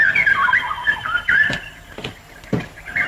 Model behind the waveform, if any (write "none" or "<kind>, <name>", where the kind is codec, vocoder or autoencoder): none